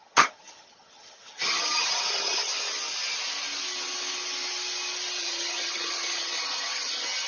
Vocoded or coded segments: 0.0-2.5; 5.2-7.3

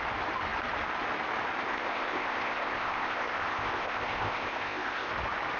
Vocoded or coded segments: 1.7-5.1

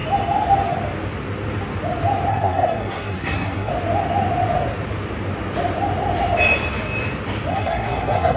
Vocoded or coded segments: 2.3-3.7; 7.5-8.4

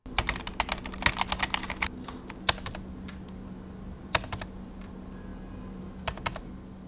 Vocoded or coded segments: none

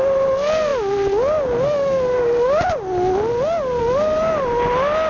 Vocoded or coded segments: none